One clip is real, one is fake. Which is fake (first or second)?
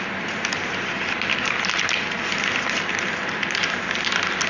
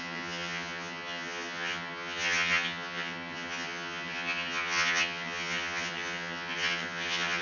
second